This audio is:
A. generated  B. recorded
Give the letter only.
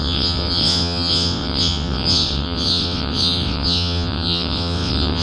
A